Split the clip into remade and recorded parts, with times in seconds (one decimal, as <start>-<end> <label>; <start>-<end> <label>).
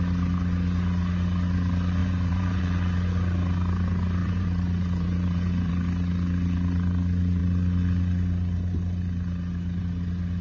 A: 0.0-2.0 recorded; 2.0-2.6 remade; 2.6-4.2 recorded; 4.2-5.7 remade; 5.7-10.4 recorded